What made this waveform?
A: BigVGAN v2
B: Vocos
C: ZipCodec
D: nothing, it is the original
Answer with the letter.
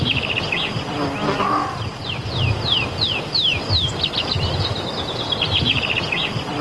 D